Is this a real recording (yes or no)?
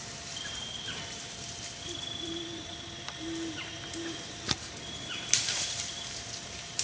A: no